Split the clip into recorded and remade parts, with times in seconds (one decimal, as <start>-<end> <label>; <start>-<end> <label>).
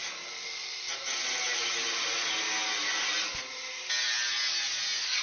0.0-5.2 recorded